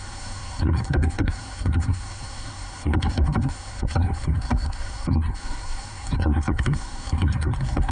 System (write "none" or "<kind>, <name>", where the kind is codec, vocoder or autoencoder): codec, SNAC